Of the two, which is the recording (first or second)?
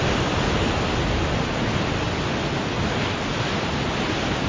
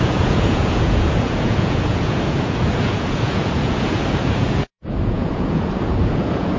first